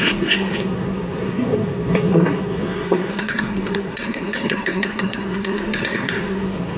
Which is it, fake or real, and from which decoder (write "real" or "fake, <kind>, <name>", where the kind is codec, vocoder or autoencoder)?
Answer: fake, codec, SNAC